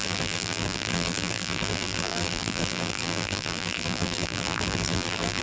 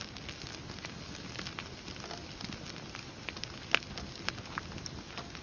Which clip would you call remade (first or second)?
first